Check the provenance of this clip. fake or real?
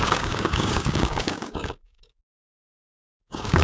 fake